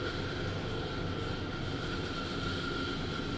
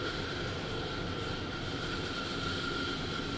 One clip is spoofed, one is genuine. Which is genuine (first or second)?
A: first